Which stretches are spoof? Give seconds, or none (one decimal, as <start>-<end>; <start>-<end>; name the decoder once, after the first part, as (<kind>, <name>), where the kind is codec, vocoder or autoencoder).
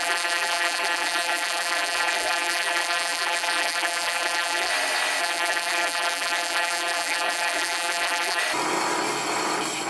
0.0-4.7 (vocoder, BigVGAN v2); 5.2-8.4